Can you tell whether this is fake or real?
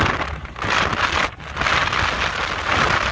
real